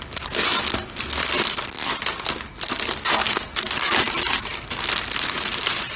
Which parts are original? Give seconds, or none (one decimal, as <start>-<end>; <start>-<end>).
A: 0.0-6.0

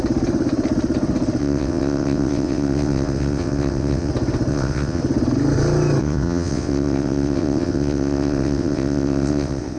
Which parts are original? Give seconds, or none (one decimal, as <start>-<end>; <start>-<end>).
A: 0.0-1.4; 4.1-4.5; 5.0-6.0

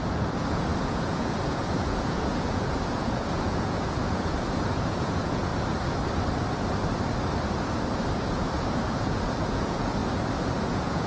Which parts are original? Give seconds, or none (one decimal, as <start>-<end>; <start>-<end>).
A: 5.5-8.1; 10.0-10.7

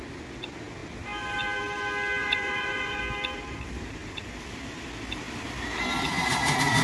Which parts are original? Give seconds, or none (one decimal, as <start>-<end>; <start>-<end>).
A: 0.0-2.2; 3.0-6.8

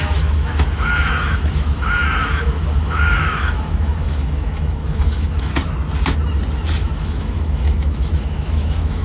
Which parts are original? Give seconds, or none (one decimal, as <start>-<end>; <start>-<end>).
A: 5.5-6.8